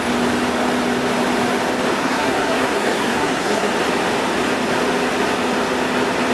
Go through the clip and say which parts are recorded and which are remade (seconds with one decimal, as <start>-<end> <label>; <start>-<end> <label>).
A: 0.0-2.0 recorded; 2.0-3.7 remade; 3.7-6.3 recorded